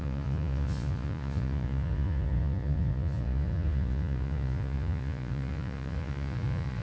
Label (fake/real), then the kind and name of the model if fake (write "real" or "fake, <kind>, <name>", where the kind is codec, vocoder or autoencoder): fake, vocoder, Vocos